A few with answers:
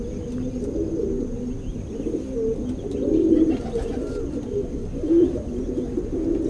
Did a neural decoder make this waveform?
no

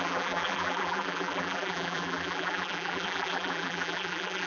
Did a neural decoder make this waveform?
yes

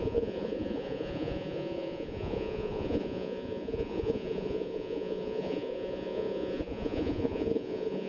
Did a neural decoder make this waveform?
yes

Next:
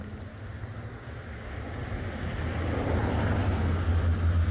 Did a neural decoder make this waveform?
no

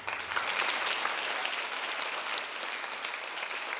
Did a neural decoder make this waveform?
no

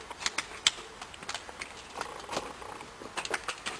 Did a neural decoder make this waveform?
no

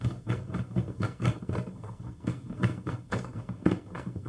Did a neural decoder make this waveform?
yes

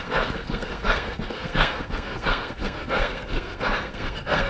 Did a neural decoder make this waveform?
yes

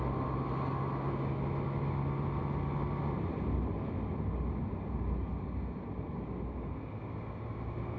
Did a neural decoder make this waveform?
no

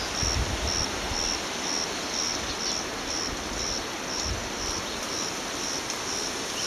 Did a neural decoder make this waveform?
no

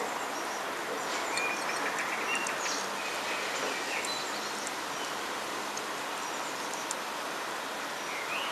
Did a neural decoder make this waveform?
no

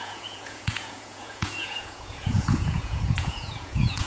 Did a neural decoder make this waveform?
yes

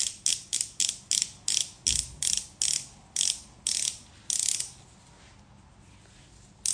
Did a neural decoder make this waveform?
no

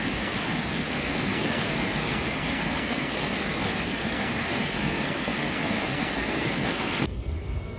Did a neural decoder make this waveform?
yes